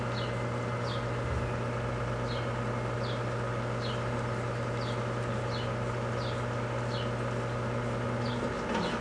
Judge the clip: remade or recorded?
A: recorded